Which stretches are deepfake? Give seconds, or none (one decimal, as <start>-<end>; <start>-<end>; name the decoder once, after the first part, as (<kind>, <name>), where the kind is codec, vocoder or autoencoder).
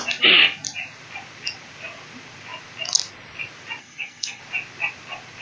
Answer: 3.8-4.4 (codec, SNAC)